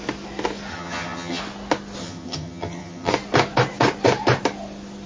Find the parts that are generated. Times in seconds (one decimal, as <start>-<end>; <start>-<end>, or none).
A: 0.7-1.4; 2.0-3.1

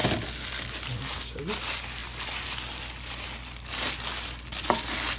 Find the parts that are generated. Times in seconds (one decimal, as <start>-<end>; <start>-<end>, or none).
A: none

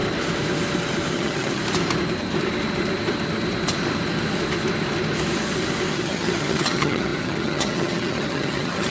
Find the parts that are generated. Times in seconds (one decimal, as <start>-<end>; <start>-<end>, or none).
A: 1.1-1.6; 5.9-8.9

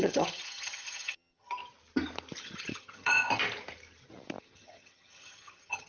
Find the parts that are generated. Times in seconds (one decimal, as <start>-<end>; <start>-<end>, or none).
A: 0.0-1.6; 2.4-3.1; 4.4-5.9

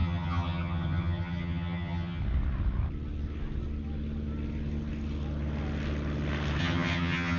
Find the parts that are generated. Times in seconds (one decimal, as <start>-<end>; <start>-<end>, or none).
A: 0.0-2.2; 6.6-7.4